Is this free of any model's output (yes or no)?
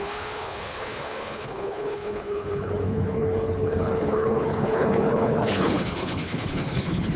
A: no